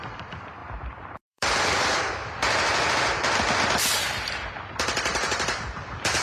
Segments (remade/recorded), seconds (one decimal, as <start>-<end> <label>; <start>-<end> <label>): 0.0-0.6 recorded; 0.6-1.5 remade; 1.5-5.1 recorded; 5.1-5.8 remade; 5.8-6.2 recorded